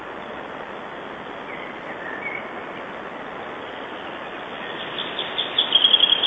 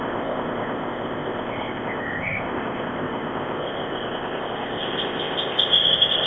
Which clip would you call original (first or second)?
first